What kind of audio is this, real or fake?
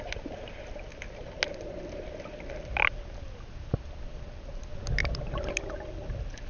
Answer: real